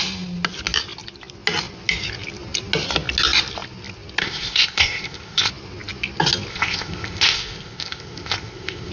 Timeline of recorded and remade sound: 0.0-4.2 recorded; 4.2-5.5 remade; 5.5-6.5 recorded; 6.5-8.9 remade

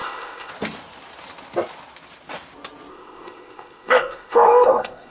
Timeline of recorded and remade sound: 0.0-0.5 remade; 0.5-2.9 recorded; 2.9-5.1 remade

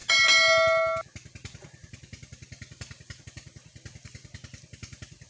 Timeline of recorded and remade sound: 0.0-5.3 recorded

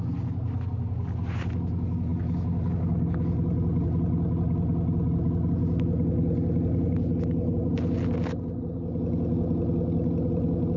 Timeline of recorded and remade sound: 0.0-10.8 recorded

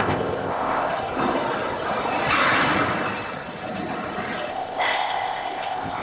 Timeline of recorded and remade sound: 0.0-0.9 remade; 0.9-4.5 recorded; 4.5-6.0 remade

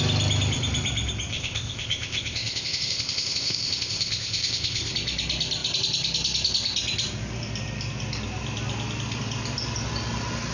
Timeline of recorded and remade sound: 0.0-1.3 recorded; 1.3-4.9 remade; 4.9-10.5 recorded

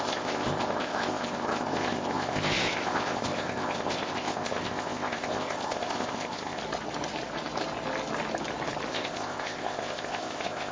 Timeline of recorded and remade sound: 0.0-6.6 remade; 6.6-8.9 recorded; 8.9-10.7 remade

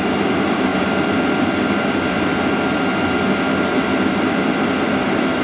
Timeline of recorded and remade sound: 0.0-5.4 recorded